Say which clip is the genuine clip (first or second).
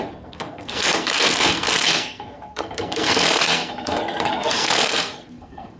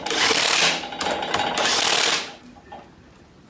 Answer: second